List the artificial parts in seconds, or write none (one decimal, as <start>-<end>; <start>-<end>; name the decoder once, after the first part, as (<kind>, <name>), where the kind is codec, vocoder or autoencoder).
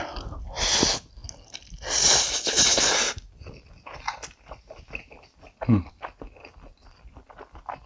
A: none